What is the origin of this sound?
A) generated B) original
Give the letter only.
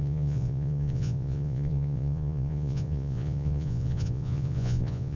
A